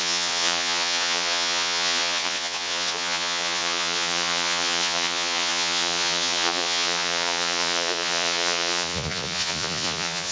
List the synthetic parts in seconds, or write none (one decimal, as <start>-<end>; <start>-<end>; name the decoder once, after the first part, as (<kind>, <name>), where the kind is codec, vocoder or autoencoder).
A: 0.0-10.3 (vocoder, Vocos)